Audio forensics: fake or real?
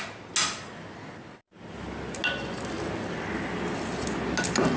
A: real